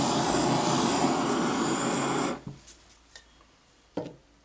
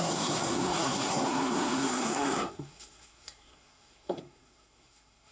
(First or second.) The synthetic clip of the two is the second